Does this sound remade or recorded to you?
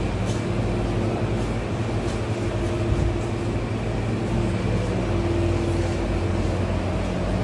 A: recorded